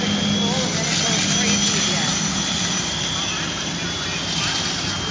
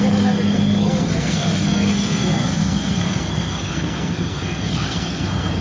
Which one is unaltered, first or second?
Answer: first